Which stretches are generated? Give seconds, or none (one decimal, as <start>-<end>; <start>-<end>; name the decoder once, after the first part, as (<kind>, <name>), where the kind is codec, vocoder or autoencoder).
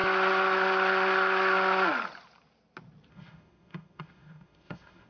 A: 3.1-5.1 (autoencoder, DAC-VAE)